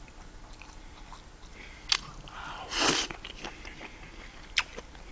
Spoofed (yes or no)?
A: no